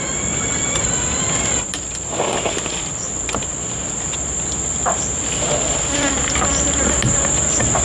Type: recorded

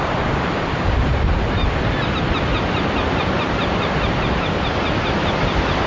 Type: recorded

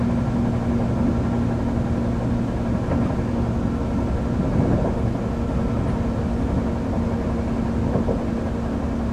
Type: recorded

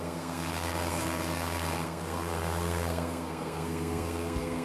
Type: remade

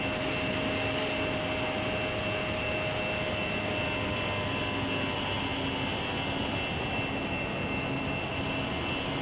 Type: recorded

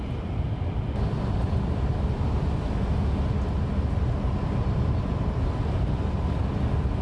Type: recorded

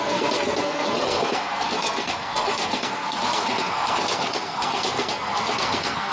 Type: remade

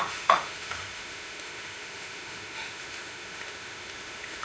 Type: remade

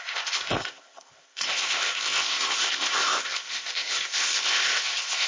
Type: remade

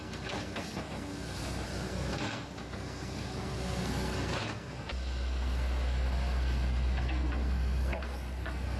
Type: remade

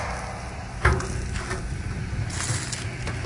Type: recorded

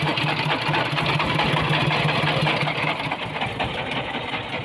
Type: recorded